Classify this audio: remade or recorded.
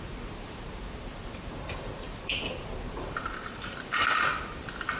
remade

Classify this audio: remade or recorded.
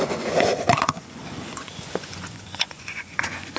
remade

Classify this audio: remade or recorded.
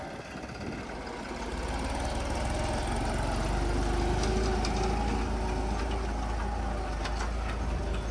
recorded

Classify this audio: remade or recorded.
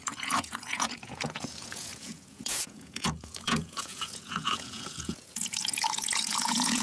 remade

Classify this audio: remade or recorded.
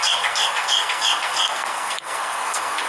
remade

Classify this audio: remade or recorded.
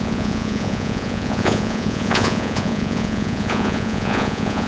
remade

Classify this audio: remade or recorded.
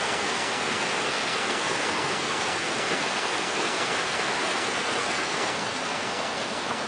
remade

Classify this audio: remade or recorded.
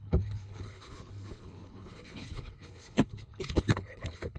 remade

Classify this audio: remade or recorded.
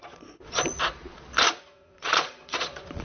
remade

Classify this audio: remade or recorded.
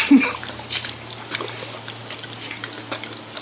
recorded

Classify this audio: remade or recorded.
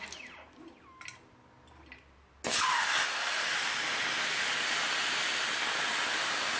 recorded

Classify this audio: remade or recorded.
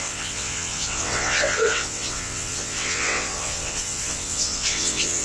remade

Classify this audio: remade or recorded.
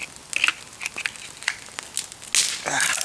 recorded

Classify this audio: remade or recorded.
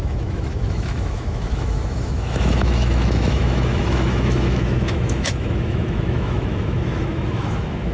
remade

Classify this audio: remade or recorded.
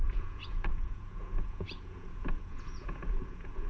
remade